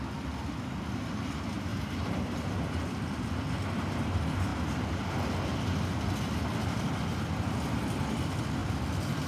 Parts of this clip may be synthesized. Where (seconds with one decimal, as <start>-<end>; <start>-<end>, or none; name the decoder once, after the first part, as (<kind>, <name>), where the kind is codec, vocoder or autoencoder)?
none